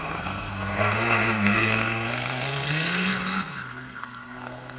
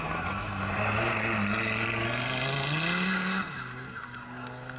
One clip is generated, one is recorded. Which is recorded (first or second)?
second